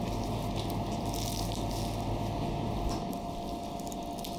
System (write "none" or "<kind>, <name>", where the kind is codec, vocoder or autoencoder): none